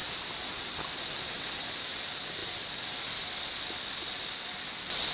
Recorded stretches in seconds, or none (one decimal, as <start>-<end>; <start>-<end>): 0.0-5.1

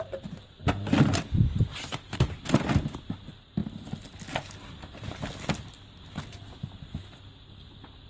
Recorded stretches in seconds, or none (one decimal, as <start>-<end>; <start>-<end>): 0.0-0.6; 2.6-8.1

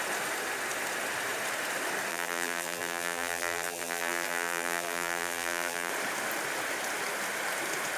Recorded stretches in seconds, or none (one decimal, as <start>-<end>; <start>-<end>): 0.0-2.1; 5.9-8.0

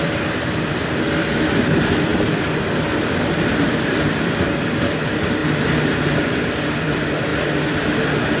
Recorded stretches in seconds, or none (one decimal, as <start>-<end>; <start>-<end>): 2.1-4.0; 5.4-5.9; 7.3-8.4

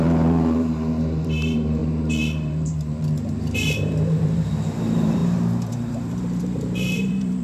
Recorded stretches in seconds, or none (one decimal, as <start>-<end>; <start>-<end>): none

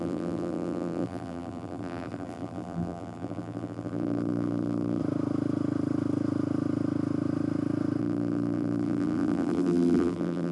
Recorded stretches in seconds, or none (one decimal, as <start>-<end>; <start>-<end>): 5.0-8.0

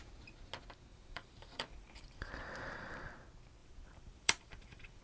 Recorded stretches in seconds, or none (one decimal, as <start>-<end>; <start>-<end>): 0.0-0.9; 2.3-3.6